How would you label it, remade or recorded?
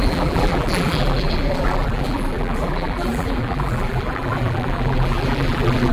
remade